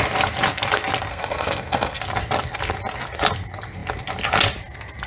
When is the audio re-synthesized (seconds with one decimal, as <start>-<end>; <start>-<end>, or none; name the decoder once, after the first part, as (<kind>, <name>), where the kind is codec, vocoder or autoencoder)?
1.1-2.0 (codec, SNAC)